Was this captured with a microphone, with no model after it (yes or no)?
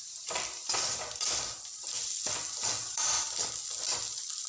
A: no